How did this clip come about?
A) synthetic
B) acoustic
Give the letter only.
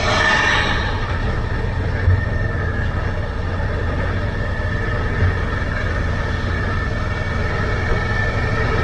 B